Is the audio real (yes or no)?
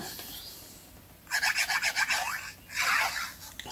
yes